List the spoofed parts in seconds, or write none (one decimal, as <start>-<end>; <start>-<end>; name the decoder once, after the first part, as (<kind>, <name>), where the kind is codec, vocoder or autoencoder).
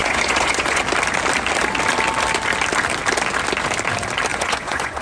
0.0-0.8 (vocoder, Vocos); 4.3-5.0